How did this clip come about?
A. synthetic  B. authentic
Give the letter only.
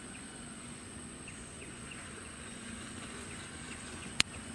A